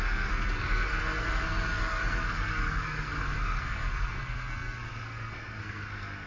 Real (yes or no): no